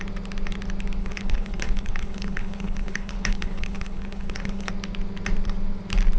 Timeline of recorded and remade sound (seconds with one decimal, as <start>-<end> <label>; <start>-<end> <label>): 0.0-1.0 recorded; 1.0-4.7 remade; 4.7-6.2 recorded